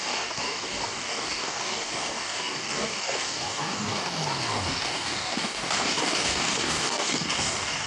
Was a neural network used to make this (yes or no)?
yes